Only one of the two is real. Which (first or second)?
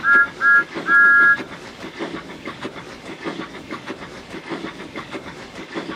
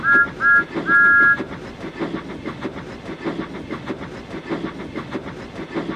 second